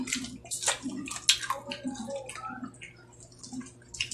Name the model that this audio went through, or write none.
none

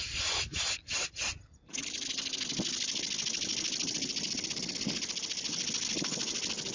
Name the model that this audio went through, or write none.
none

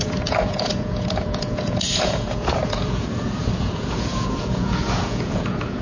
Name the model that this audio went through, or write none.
vocoder, Vocos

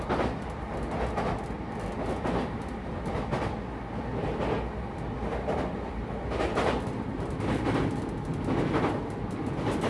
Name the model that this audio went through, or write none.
none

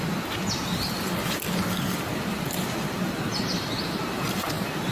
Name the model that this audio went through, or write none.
none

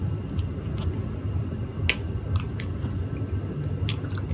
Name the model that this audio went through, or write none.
none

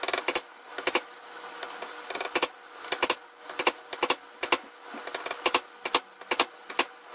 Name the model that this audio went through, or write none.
none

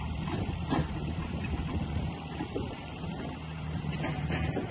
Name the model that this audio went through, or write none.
vocoder, BigVGAN v2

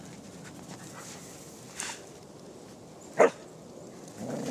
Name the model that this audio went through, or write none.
none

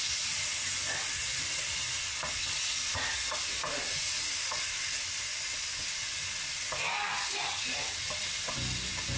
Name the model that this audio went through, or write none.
none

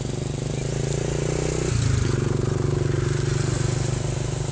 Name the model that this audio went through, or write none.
none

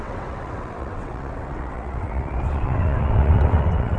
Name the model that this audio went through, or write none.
vocoder, WaveNeXt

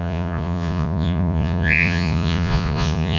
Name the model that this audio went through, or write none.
vocoder, Vocos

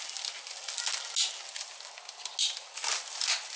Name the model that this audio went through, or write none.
none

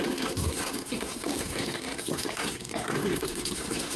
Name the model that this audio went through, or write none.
codec, SNAC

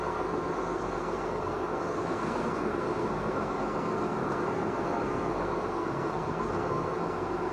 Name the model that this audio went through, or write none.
codec, SNAC